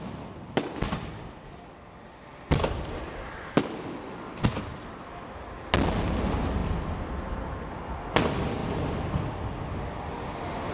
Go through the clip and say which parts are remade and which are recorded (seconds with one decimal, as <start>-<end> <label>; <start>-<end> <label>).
0.0-10.7 recorded

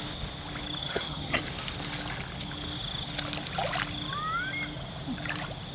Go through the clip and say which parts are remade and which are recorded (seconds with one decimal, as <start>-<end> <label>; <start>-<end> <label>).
0.0-0.8 recorded; 0.8-1.4 remade; 1.4-5.7 recorded

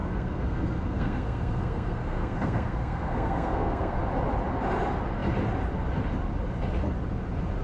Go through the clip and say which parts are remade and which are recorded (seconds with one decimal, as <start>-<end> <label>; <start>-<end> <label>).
0.0-4.0 remade; 4.0-7.6 recorded